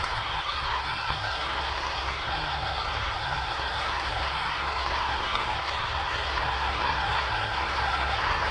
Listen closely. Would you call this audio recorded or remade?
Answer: remade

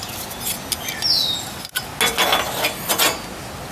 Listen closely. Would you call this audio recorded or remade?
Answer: recorded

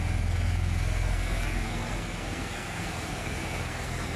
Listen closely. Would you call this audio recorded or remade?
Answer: remade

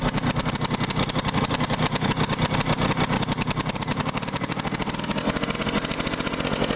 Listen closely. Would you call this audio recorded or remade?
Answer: recorded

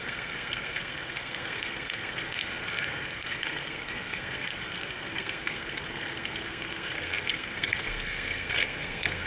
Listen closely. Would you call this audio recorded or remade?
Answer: remade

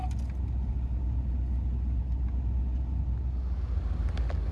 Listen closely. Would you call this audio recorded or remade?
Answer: recorded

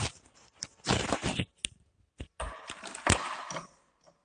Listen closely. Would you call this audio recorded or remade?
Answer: recorded